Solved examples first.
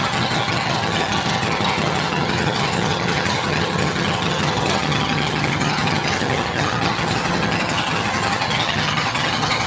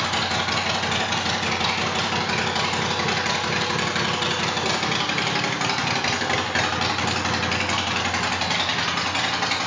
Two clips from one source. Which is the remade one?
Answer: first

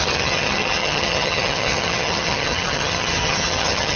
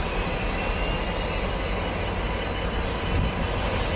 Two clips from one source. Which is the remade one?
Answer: first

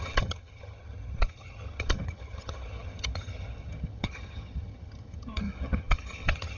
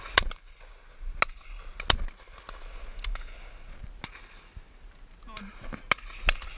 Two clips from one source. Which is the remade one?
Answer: first